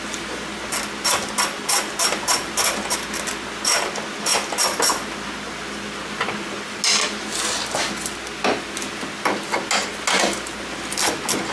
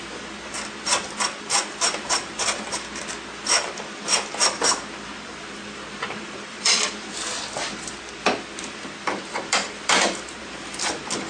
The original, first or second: first